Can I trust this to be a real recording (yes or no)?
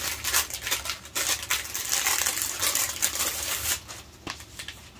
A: yes